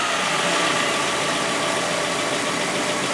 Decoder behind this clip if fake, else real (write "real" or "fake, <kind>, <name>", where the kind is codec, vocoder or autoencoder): real